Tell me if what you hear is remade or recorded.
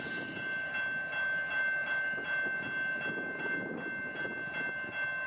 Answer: recorded